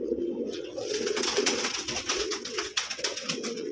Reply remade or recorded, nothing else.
remade